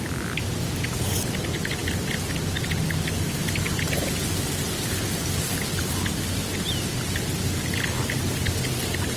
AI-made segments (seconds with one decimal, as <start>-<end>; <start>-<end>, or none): none